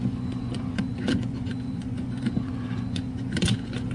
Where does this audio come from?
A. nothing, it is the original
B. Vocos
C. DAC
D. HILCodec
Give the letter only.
B